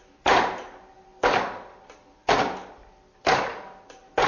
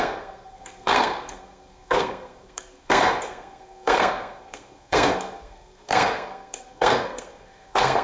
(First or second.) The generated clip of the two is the second